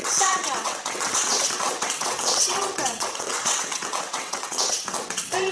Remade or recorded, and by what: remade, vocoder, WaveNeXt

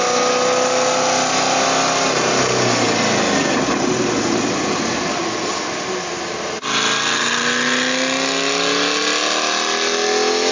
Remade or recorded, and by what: recorded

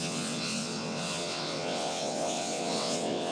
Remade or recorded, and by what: remade, vocoder, WaveNeXt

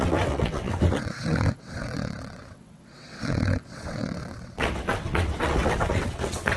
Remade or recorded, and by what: remade, vocoder, WaveNeXt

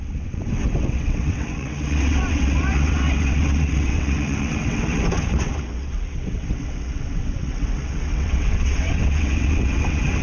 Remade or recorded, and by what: remade, vocoder, WaveNeXt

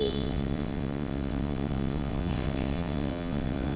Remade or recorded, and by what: remade, vocoder, WaveNeXt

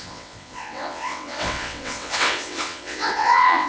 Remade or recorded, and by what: remade, vocoder, WaveNeXt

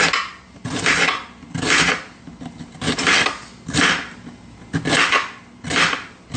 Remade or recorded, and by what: recorded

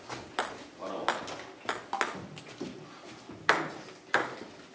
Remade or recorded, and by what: recorded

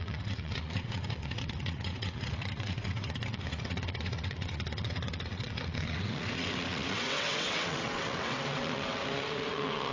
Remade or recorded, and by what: remade, vocoder, WaveNeXt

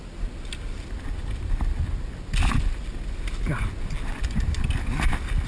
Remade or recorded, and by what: recorded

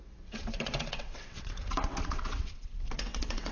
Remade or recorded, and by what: remade, vocoder, WaveNeXt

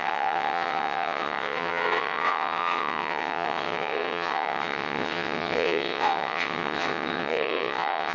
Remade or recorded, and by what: remade, vocoder, WaveNeXt